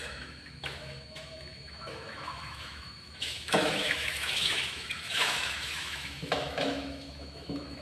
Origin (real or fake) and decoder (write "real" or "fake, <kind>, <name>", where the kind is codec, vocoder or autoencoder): fake, autoencoder, DAC-VAE